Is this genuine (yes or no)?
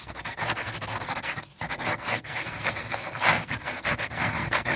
no